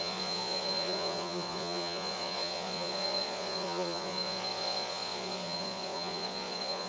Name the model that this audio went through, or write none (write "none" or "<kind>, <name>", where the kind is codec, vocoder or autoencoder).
vocoder, Vocos